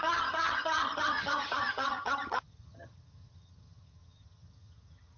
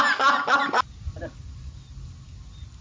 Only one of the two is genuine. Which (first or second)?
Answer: second